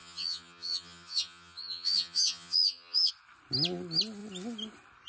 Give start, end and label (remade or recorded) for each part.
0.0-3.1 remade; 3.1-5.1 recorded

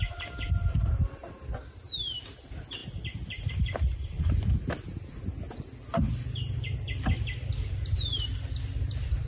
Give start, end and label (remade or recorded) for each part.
0.0-9.3 recorded

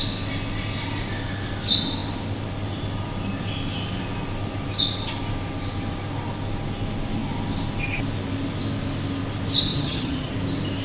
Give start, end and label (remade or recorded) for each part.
0.0-9.7 recorded; 9.7-10.3 remade; 10.3-10.8 recorded